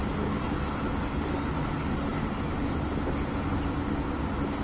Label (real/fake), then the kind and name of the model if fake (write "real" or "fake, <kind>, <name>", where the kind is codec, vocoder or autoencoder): real